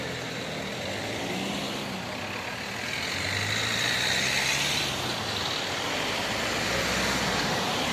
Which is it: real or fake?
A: real